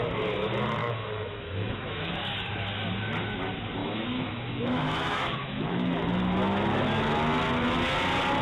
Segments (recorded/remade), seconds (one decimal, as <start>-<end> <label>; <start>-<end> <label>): 0.0-0.8 recorded; 0.8-2.1 remade; 2.1-3.8 recorded; 3.8-5.9 remade; 5.9-8.4 recorded